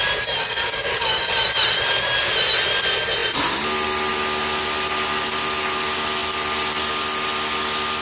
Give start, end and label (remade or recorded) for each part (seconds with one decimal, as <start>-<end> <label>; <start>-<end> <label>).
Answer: 0.0-0.4 recorded; 0.4-1.3 remade; 1.3-8.0 recorded